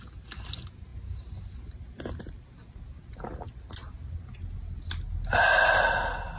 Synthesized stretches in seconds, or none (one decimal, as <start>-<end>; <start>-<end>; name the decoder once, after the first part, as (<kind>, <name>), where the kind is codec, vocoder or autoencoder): none